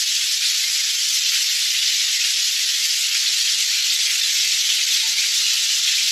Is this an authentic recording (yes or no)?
yes